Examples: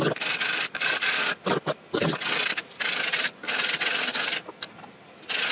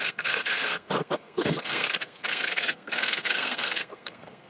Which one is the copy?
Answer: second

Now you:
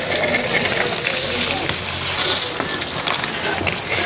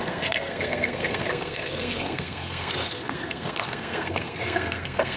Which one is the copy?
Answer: second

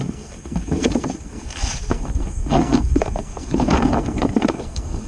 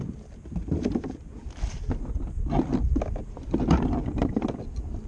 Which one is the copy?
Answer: first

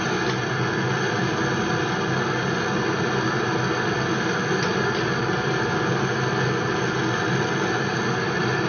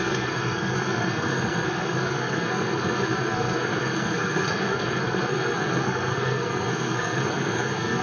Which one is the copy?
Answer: second